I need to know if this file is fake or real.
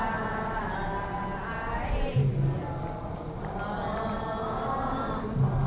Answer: real